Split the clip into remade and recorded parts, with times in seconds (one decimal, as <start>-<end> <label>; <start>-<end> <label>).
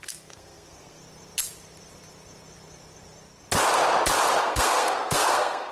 0.0-1.0 remade; 1.0-4.4 recorded; 4.4-5.7 remade